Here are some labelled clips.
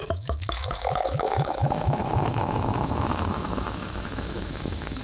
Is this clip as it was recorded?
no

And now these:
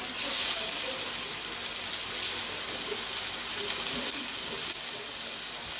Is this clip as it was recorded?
yes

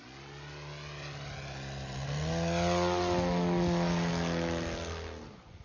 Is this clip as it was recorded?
yes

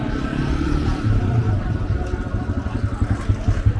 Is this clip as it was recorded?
yes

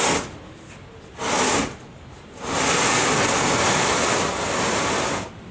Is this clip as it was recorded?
yes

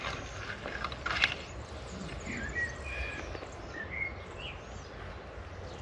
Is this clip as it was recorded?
yes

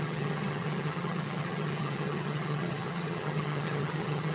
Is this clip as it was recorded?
no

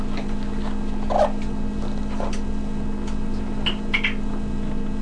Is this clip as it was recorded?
yes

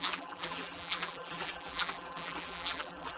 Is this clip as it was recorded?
no